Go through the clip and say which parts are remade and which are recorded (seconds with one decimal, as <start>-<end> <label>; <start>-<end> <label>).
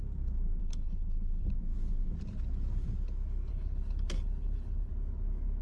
0.0-0.6 recorded; 0.6-1.5 remade; 1.5-3.5 recorded; 3.5-4.9 remade; 4.9-5.6 recorded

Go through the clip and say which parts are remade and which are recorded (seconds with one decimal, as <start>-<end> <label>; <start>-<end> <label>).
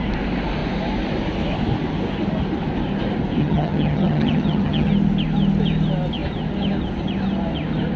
0.0-3.4 recorded; 3.4-4.9 remade; 4.9-8.0 recorded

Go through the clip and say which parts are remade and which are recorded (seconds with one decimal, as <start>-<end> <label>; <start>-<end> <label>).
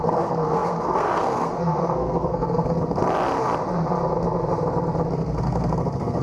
0.0-3.0 remade; 3.0-5.1 recorded; 5.1-6.2 remade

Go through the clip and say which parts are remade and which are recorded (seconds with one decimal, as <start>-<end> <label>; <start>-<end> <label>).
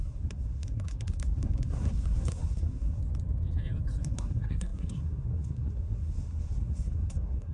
0.0-3.0 remade; 3.0-4.0 recorded; 4.0-7.5 remade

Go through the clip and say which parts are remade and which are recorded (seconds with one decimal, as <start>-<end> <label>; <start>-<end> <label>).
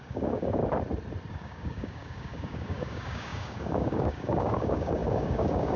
0.0-0.6 remade; 0.6-1.3 recorded; 1.3-5.8 remade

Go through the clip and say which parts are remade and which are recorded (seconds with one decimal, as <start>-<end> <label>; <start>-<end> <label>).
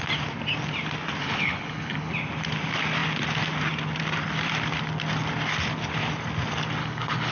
0.0-1.2 recorded; 1.2-2.1 remade; 2.1-6.8 recorded; 6.8-7.3 remade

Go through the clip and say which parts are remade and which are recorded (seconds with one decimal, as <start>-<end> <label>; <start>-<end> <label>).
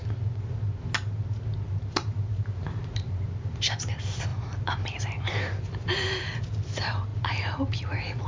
0.0-1.9 recorded; 1.9-8.3 remade